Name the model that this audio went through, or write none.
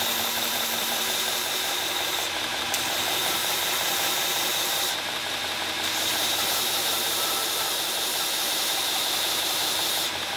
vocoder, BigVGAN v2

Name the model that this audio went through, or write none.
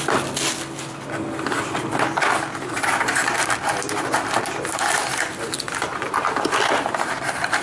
none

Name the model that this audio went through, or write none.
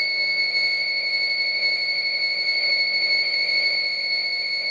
autoencoder, DAC-VAE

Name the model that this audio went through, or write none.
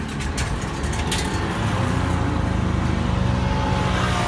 none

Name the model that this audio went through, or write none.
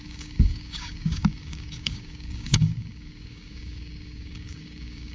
codec, DAC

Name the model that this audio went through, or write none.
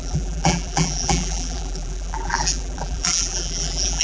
vocoder, BigVGAN v2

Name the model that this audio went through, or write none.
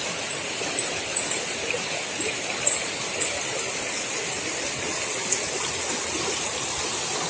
none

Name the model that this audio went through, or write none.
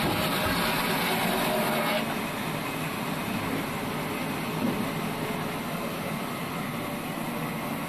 none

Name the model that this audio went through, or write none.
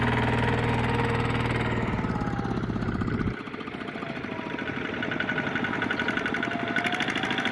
none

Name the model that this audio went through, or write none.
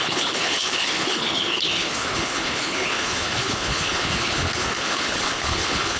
codec, HILCodec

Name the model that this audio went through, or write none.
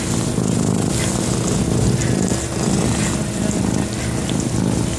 none